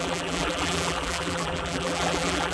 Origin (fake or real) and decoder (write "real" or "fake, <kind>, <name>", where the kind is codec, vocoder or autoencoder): fake, vocoder, BigVGAN v2